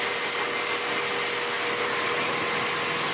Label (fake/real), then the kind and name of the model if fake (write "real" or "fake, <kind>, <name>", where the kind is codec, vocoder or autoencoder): real